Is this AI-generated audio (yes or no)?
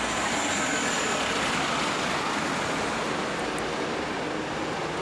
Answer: no